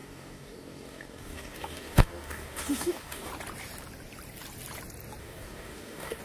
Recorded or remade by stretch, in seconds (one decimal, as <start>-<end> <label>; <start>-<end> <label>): 0.0-3.3 remade; 3.3-5.2 recorded; 5.2-6.2 remade